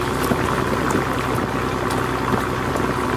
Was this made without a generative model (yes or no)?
yes